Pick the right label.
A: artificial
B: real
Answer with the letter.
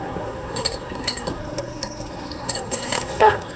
A